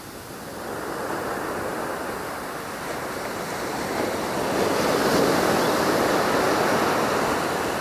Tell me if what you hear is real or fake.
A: real